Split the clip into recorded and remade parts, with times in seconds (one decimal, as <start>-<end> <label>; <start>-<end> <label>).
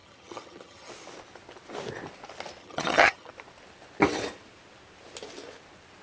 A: 0.0-0.9 remade; 0.9-2.6 recorded; 2.6-3.3 remade; 3.3-6.0 recorded